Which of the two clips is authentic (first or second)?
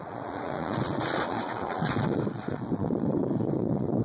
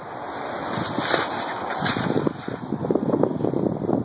second